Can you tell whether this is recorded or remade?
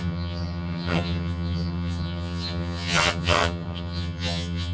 remade